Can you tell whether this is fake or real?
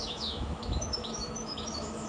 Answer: fake